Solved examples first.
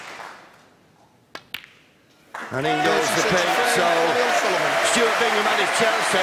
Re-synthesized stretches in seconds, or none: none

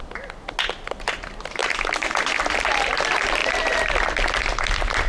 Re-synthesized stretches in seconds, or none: none

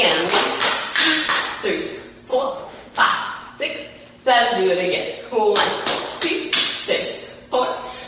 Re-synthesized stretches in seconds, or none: 0.6-1.4 (autoencoder, DAC-VAE); 2.3-3.5